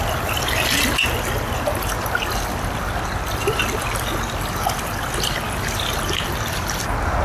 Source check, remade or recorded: recorded